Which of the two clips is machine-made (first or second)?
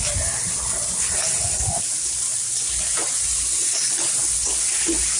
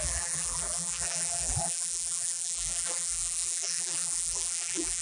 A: second